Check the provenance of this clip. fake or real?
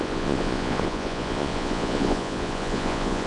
fake